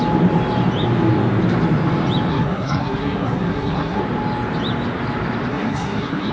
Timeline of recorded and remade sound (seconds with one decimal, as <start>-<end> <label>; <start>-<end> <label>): 0.0-2.3 recorded; 2.3-4.0 remade; 4.0-5.5 recorded; 5.5-6.3 remade

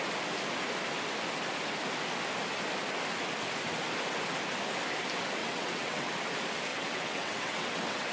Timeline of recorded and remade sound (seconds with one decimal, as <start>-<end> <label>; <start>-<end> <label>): 0.0-5.4 recorded; 5.4-6.1 remade; 6.1-6.7 recorded; 6.7-8.1 remade